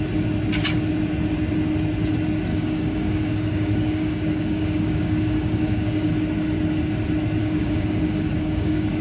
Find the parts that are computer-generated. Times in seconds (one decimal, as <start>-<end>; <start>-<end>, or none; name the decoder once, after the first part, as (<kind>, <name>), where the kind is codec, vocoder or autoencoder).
2.5-6.1 (codec, DAC); 7.4-9.0